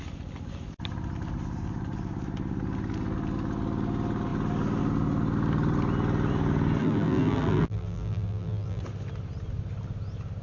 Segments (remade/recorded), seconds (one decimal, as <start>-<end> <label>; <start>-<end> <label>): 0.0-6.8 recorded; 6.8-8.8 remade; 8.8-10.4 recorded